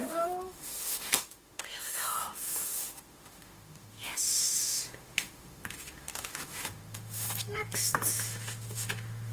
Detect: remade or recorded remade